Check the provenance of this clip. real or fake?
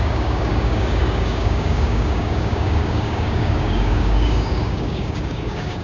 fake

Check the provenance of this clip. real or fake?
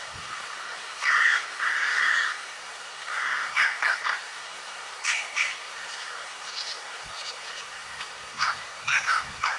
fake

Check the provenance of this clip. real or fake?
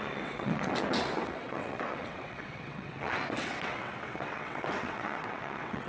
fake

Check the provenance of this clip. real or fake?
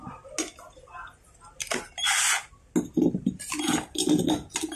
real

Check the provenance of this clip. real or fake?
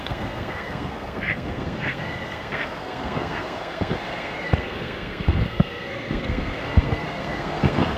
fake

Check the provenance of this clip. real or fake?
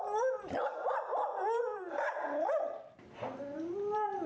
real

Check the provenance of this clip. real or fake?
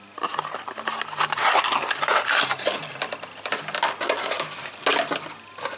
real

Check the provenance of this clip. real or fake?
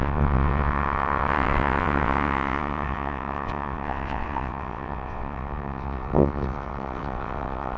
fake